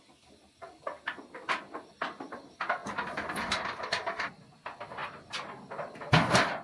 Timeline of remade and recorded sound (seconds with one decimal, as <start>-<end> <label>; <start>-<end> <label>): 0.0-6.6 recorded